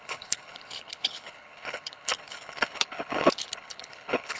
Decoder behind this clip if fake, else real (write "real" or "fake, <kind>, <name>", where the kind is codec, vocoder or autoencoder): fake, codec, HILCodec